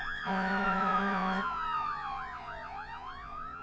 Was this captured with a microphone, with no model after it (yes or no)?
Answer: no